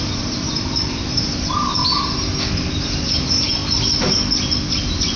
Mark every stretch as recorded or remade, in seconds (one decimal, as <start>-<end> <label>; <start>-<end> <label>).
0.0-1.8 remade; 1.8-2.8 recorded; 2.8-3.6 remade; 3.6-4.8 recorded; 4.8-5.2 remade